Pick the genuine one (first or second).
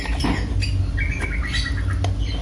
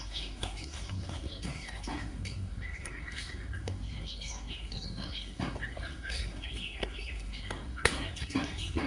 first